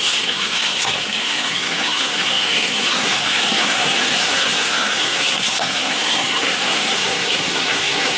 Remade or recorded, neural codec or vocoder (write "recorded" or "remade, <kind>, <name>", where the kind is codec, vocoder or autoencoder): remade, codec, SNAC